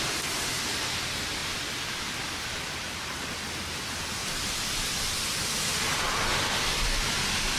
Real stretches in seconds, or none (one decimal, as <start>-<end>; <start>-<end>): 0.0-4.2; 5.1-7.6

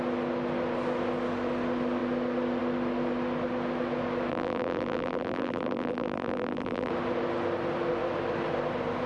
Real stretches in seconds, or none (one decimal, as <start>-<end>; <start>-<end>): 0.0-4.3; 6.9-9.1

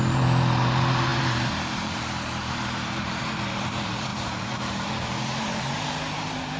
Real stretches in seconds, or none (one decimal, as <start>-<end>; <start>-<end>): none

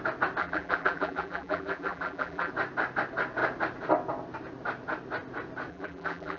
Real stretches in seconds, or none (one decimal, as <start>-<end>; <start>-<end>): 0.0-0.4; 2.5-5.7

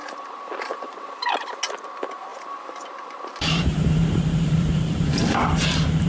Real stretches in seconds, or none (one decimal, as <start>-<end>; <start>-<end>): 1.3-2.3

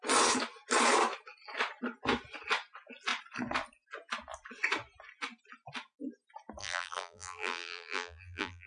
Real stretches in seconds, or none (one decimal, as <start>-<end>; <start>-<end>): 0.0-6.6

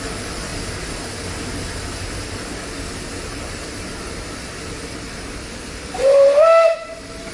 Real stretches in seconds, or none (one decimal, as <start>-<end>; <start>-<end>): 0.5-3.2